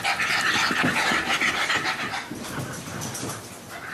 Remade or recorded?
recorded